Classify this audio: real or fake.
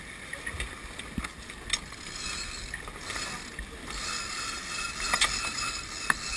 real